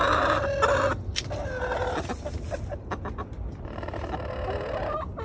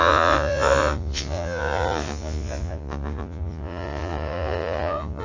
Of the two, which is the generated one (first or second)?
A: second